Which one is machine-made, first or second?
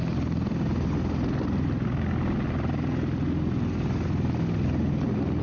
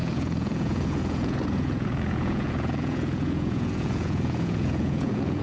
second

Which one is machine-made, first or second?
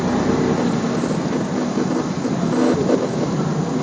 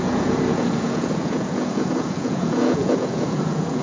second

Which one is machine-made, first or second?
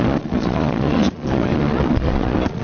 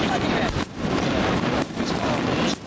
first